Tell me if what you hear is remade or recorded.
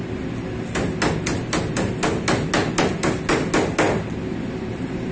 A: recorded